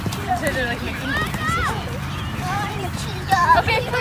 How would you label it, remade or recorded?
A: remade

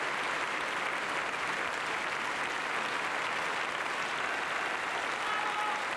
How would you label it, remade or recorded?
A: recorded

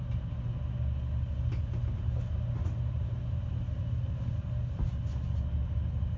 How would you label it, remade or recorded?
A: recorded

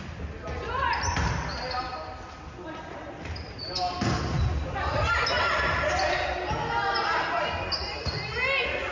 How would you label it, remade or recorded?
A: recorded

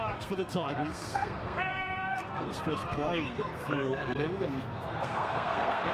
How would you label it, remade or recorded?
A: remade